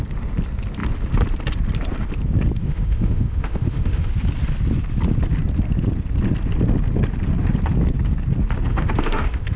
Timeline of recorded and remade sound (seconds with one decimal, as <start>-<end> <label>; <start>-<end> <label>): 0.0-2.6 recorded; 2.6-4.1 remade; 4.1-8.7 recorded; 8.7-9.6 remade

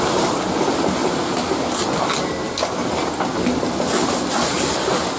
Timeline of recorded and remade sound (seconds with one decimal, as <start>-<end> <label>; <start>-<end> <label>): 0.0-5.2 recorded

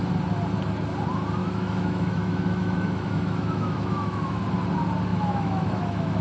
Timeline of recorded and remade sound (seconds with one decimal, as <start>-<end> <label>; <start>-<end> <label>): 0.0-1.4 recorded; 1.4-4.4 remade; 4.4-5.1 recorded; 5.1-6.2 remade

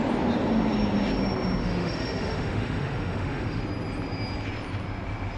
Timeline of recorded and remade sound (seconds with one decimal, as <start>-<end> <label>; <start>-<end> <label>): 0.0-1.6 recorded; 1.6-3.6 remade; 3.6-5.4 recorded

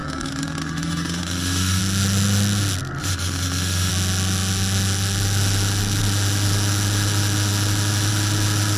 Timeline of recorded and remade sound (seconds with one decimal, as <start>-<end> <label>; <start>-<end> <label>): 0.0-1.8 remade; 1.8-3.0 recorded; 3.0-3.9 remade; 3.9-8.8 recorded

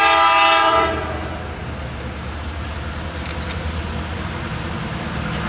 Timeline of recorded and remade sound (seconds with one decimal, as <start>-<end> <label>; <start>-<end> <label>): 0.0-5.5 recorded

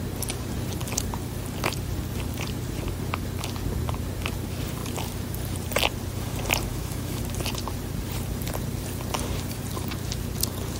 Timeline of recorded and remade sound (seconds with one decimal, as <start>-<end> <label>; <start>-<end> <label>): 0.0-6.7 recorded; 6.7-7.2 remade; 7.2-10.8 recorded